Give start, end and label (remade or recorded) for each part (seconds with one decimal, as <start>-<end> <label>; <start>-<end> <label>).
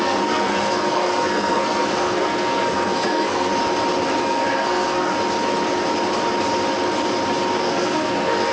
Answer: 0.0-3.5 remade; 3.5-4.2 recorded; 4.2-5.1 remade; 5.1-7.6 recorded; 7.6-8.5 remade